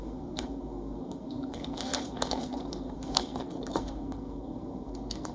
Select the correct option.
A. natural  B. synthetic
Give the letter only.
B